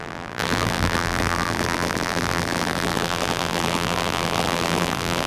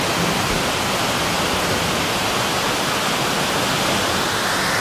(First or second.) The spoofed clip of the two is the first